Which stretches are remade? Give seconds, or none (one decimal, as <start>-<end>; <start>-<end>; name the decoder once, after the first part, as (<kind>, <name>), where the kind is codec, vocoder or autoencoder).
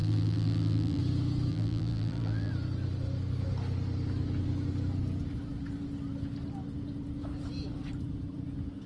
0.0-1.0 (vocoder, BigVGAN v2); 1.5-2.5